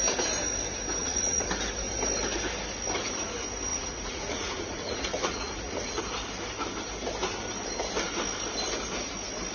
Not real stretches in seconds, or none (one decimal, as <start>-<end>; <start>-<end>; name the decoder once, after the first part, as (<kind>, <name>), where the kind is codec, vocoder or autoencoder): 1.0-1.5 (vocoder, Vocos); 3.7-6.0